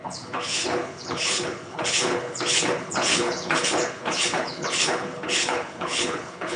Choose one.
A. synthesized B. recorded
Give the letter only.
A